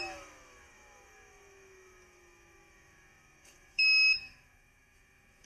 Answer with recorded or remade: remade